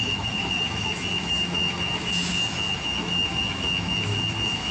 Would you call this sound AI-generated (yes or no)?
yes